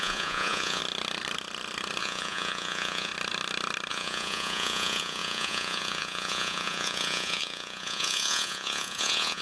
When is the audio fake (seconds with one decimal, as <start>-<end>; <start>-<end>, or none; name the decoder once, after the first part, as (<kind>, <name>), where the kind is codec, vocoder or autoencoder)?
0.0-0.8 (vocoder, Vocos); 2.0-3.1; 3.9-9.4